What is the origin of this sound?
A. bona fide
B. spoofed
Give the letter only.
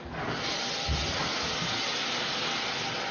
A